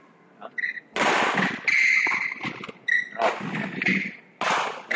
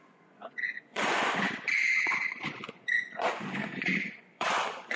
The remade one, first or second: second